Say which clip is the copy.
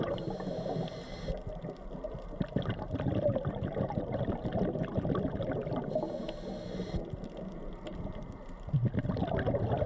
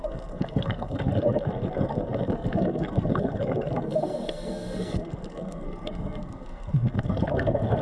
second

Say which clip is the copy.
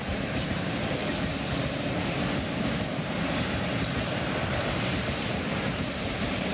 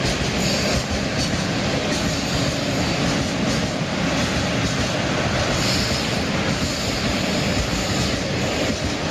first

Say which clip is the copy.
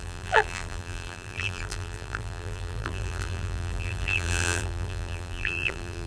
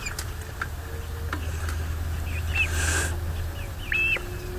first